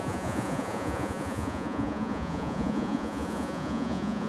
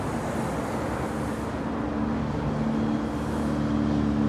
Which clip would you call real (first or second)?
second